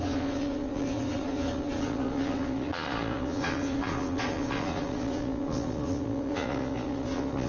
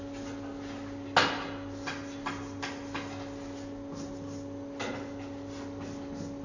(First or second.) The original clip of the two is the second